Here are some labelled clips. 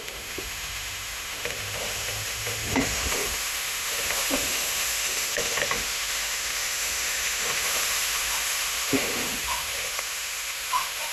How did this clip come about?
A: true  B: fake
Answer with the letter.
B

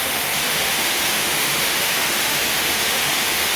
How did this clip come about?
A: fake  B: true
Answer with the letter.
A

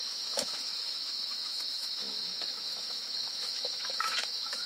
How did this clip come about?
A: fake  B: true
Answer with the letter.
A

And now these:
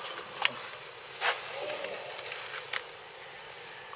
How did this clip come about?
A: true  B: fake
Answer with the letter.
A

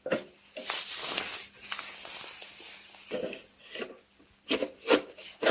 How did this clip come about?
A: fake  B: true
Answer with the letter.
B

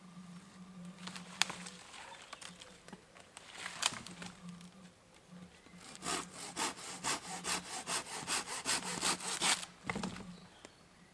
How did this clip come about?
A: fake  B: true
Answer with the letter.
B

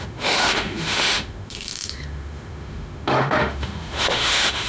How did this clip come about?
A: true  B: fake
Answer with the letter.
B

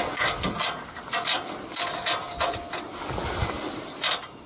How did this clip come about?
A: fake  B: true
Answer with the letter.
B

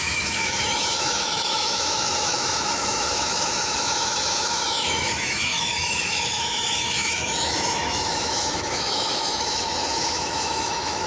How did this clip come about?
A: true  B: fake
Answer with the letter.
B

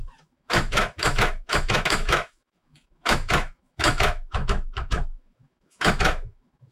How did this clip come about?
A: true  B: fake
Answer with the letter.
B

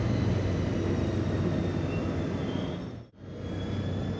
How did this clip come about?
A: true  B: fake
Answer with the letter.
A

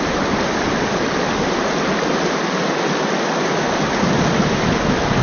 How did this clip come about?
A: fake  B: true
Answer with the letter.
B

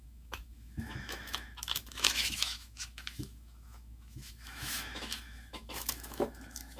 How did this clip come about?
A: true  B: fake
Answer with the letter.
B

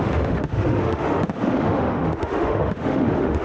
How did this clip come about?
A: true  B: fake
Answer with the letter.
B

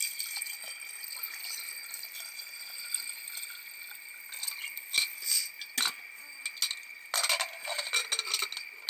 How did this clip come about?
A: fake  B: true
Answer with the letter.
B